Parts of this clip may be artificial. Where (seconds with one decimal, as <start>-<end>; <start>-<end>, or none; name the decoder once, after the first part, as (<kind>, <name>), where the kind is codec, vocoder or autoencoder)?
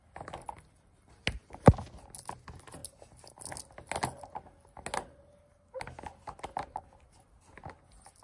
none